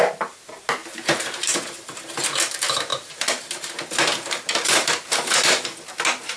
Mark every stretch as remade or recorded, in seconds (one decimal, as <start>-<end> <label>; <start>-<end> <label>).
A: 0.0-0.8 recorded; 0.8-2.1 remade; 2.1-2.9 recorded; 2.9-5.8 remade; 5.8-6.4 recorded